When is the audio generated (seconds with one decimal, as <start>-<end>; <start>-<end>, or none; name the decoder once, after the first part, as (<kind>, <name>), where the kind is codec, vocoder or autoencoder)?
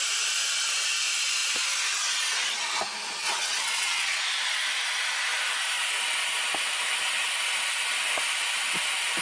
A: 3.2-4.2 (vocoder, WaveNeXt)